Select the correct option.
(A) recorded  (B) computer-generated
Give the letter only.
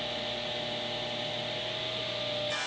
A